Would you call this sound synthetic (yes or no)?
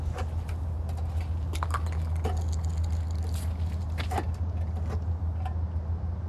no